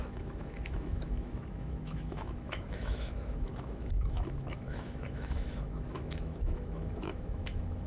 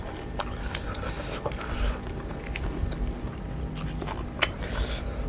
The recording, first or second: second